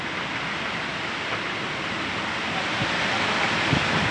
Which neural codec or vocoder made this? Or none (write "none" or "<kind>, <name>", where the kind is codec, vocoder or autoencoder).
none